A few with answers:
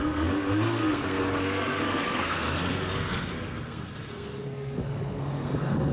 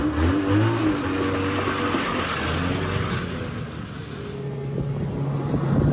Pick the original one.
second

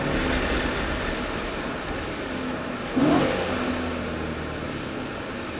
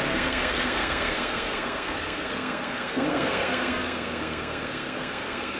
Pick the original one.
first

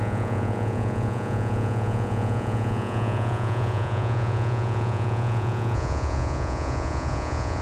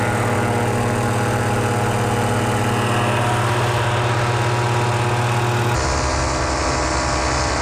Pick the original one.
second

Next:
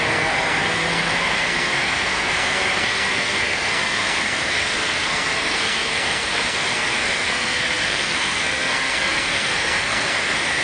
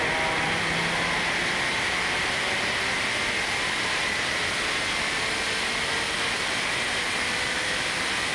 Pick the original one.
second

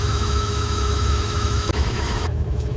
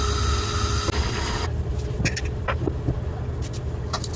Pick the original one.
second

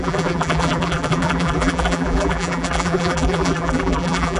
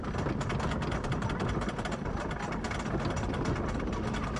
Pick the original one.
second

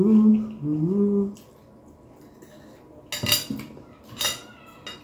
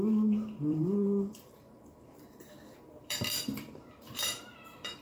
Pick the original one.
first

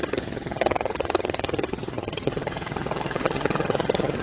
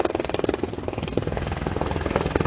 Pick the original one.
second